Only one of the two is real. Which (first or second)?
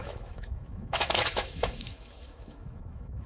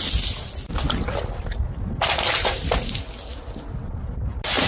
second